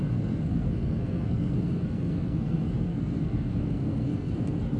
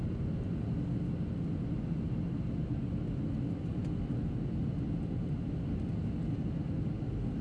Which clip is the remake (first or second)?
first